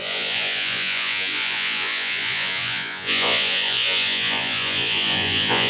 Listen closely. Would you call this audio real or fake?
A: fake